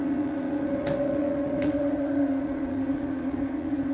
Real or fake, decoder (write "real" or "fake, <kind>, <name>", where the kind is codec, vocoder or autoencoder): fake, vocoder, Vocos